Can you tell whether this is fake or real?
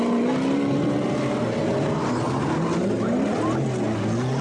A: real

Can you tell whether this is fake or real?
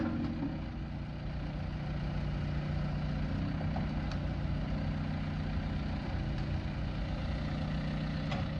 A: real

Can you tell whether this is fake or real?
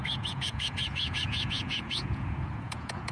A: fake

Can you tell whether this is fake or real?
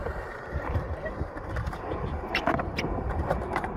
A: fake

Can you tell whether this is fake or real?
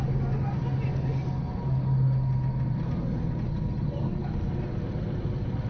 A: real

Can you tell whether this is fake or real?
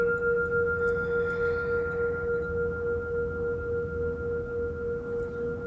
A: real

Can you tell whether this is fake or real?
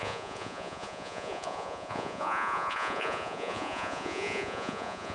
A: fake